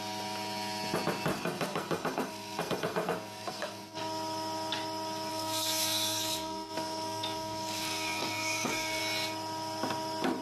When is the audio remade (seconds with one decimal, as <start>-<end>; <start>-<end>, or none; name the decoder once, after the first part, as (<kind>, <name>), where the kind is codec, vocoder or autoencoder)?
1.3-4.0 (codec, SNAC); 5.3-9.0